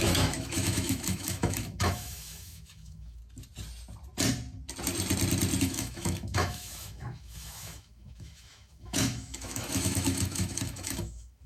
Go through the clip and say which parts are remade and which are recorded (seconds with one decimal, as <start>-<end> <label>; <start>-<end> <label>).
0.0-3.2 remade; 3.2-5.6 recorded; 5.6-11.5 remade